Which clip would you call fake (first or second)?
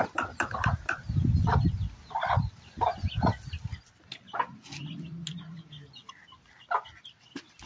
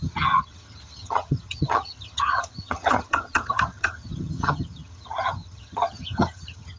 second